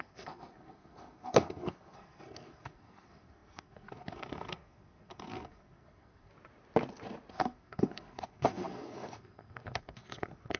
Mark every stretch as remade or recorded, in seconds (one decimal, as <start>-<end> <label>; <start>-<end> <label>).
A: 0.0-6.3 remade; 6.3-7.3 recorded; 7.3-10.6 remade